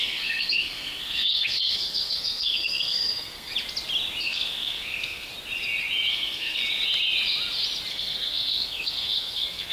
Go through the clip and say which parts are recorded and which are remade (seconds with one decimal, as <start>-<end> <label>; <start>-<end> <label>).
0.0-3.5 remade; 3.5-4.2 recorded; 4.2-5.3 remade; 5.3-6.1 recorded; 6.1-6.6 remade; 6.6-7.9 recorded; 7.9-9.7 remade